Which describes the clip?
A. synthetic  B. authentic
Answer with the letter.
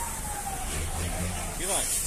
B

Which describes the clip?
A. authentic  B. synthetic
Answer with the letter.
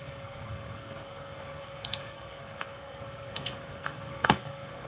B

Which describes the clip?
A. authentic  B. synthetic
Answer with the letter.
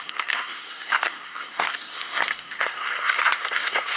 B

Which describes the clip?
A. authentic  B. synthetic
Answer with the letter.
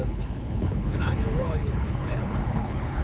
B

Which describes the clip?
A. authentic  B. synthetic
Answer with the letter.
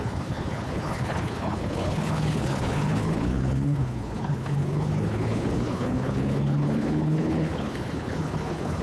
B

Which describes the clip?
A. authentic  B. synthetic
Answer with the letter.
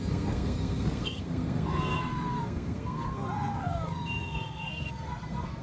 B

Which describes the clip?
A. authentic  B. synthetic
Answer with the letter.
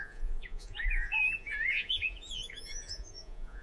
B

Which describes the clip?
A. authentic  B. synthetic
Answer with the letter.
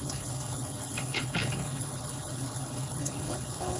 B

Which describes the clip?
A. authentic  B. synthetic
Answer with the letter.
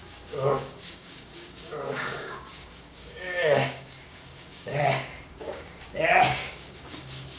B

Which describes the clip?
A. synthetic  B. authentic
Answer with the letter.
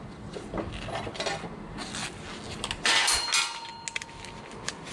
B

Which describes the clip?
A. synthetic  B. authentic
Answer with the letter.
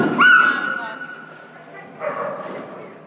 B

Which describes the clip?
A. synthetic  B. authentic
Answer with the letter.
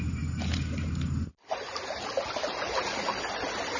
B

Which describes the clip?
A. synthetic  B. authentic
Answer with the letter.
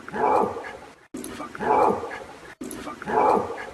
B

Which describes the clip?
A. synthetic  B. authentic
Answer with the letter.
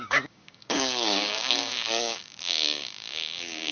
A